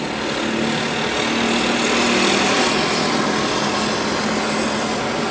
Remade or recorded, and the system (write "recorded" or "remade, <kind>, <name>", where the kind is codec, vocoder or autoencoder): recorded